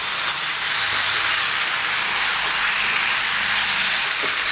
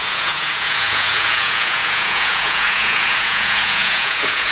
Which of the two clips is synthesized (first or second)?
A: second